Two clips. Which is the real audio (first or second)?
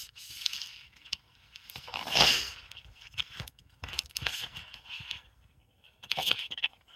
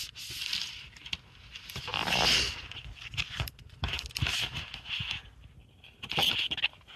second